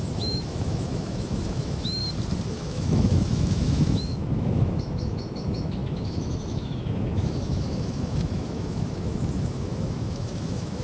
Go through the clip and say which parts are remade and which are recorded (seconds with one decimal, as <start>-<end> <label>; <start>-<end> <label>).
0.0-2.0 remade; 2.0-2.5 recorded; 2.5-10.8 remade